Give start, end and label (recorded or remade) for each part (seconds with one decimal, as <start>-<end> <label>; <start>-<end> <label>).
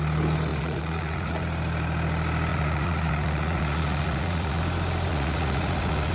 0.0-0.5 recorded; 0.5-1.4 remade; 1.4-2.5 recorded; 2.5-4.6 remade; 4.6-5.1 recorded; 5.1-6.1 remade